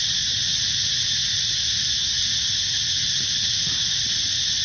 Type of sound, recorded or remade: recorded